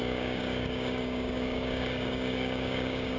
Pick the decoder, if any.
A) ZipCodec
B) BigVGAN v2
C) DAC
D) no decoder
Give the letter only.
C